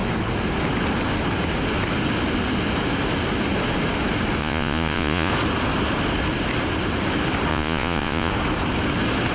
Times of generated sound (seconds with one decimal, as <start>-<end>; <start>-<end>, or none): 4.4-5.3; 7.5-8.3